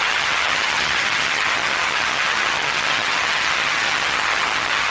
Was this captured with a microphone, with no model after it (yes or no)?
no